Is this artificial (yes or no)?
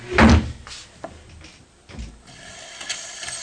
no